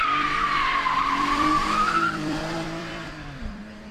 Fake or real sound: fake